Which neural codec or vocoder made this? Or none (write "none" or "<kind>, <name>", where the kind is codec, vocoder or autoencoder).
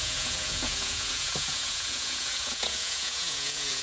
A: vocoder, Vocos